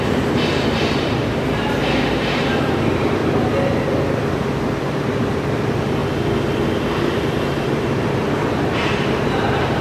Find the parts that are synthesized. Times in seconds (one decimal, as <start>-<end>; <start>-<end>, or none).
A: 0.0-3.2; 4.8-6.0; 7.0-9.8